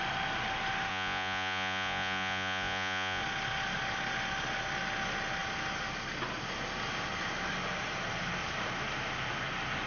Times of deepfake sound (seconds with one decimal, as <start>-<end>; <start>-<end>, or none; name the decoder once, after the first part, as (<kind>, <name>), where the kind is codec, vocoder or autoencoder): 0.9-3.2 (vocoder, Vocos)